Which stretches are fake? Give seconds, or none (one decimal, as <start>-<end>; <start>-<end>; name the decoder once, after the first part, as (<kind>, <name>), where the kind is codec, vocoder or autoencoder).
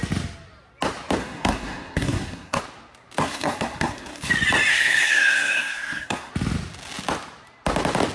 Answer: 1.2-2.6 (codec, SNAC); 3.2-4.3; 4.7-6.3